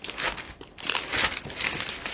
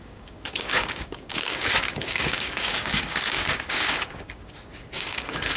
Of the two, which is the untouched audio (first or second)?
first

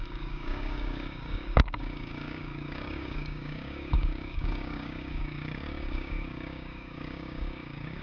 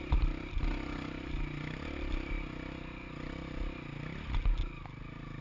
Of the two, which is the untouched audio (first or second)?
second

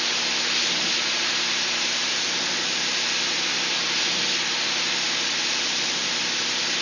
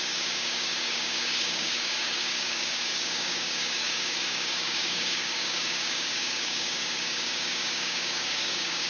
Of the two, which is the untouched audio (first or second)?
first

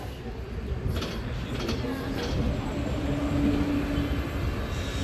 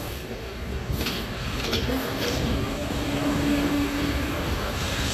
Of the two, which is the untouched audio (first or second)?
first